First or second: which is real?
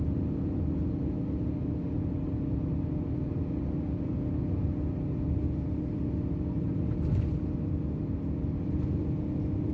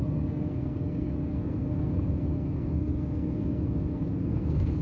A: first